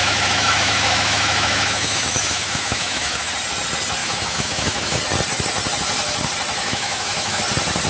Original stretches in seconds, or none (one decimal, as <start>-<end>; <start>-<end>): 3.3-4.0; 5.0-6.6; 7.4-7.9